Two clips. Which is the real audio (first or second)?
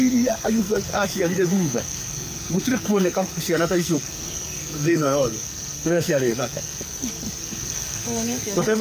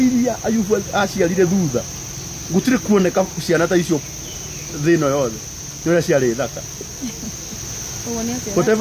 second